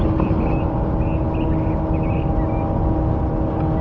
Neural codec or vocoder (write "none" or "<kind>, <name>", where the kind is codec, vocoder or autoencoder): none